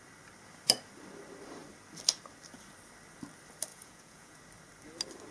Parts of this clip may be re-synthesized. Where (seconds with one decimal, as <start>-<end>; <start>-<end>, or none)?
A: 3.7-4.4